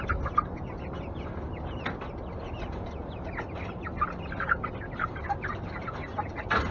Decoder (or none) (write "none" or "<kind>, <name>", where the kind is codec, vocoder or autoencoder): none